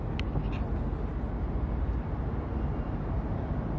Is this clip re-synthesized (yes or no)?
no